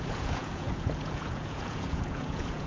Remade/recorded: remade